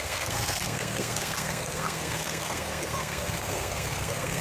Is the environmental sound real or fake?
fake